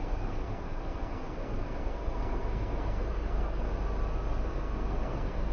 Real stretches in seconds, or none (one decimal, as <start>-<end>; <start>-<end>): 3.7-4.5